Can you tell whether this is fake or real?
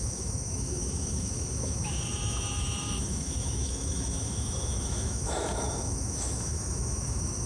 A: fake